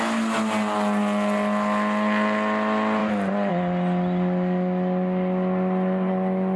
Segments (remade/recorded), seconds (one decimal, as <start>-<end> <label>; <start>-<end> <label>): 0.0-6.6 recorded

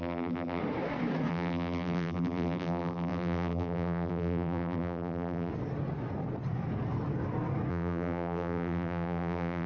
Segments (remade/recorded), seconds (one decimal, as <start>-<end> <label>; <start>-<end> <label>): 0.0-0.6 remade; 0.6-1.3 recorded; 1.3-5.5 remade; 5.5-7.7 recorded; 7.7-9.7 remade

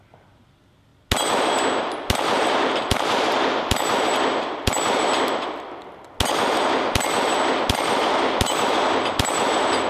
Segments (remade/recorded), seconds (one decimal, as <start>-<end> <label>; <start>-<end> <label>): 0.0-9.9 recorded

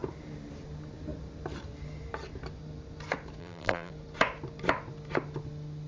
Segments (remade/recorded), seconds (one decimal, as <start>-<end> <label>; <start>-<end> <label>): 0.0-3.4 recorded; 3.4-3.9 remade; 3.9-5.9 recorded

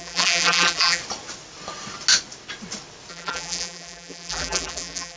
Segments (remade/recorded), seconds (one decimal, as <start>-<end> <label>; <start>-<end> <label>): 0.0-1.0 remade; 1.0-3.1 recorded; 3.1-5.2 remade

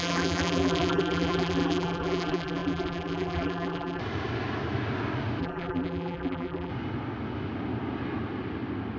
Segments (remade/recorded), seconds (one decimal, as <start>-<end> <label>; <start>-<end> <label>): 0.0-4.0 remade; 4.0-5.4 recorded; 5.4-6.7 remade; 6.7-9.0 recorded